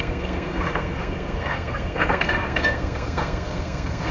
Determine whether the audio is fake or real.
fake